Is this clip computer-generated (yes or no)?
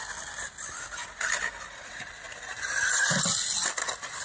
no